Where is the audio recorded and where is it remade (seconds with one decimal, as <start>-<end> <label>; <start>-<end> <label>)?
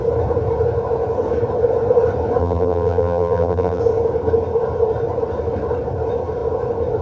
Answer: 0.0-2.4 recorded; 2.4-3.8 remade; 3.8-7.0 recorded